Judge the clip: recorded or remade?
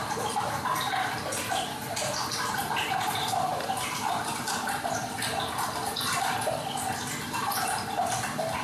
recorded